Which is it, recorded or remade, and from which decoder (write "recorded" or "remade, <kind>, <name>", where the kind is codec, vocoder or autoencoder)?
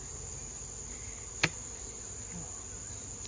recorded